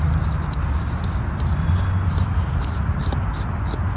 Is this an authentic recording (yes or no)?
yes